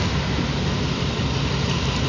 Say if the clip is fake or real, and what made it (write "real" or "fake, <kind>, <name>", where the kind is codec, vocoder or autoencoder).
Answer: real